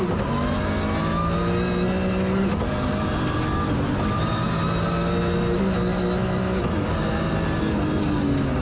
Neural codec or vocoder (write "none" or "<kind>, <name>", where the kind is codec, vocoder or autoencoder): none